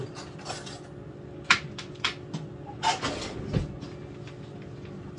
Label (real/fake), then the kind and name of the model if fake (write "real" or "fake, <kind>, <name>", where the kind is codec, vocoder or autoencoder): real